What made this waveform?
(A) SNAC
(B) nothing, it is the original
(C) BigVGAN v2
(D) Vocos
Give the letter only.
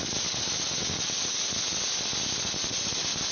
B